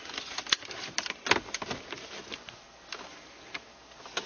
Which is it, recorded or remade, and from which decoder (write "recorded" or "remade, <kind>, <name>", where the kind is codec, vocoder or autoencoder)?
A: recorded